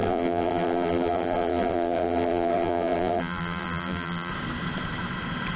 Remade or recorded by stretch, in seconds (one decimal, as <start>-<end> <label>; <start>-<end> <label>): 0.0-4.3 remade; 4.3-5.6 recorded

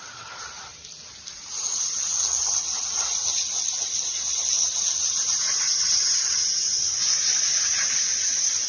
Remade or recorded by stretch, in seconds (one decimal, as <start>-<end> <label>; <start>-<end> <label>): 0.0-0.7 remade; 0.7-5.4 recorded; 5.4-8.7 remade

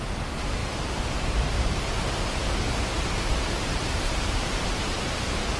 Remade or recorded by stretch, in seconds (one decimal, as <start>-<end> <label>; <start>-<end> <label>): 0.0-5.6 remade

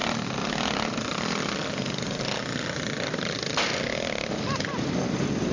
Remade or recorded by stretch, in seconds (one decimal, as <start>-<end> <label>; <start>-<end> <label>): 0.0-5.5 recorded

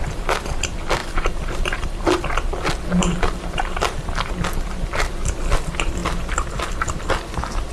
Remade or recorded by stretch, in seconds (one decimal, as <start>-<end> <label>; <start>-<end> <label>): 0.0-1.0 recorded; 1.0-2.2 remade; 2.2-3.0 recorded; 3.0-4.3 remade; 4.3-7.7 recorded